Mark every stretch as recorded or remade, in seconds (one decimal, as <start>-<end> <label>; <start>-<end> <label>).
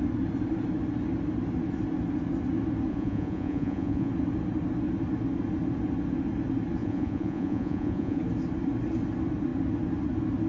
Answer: 0.0-2.9 recorded; 2.9-4.1 remade; 4.1-6.8 recorded; 6.8-8.2 remade; 8.2-10.5 recorded